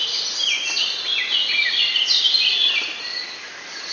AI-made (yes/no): no